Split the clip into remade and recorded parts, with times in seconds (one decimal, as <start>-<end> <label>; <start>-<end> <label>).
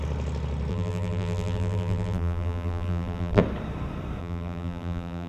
0.0-0.7 recorded; 0.7-3.4 remade; 3.4-4.2 recorded; 4.2-5.3 remade